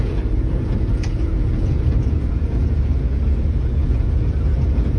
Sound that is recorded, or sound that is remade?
remade